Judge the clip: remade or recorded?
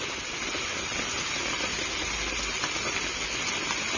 recorded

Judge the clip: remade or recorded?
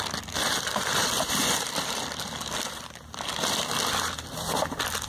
remade